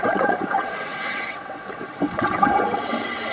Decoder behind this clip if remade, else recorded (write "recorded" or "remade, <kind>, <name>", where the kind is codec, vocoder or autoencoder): remade, vocoder, WaveNeXt